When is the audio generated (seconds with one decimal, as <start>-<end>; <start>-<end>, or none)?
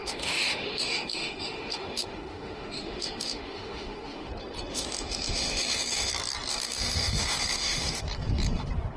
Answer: 0.0-4.3; 4.7-6.1; 6.5-8.0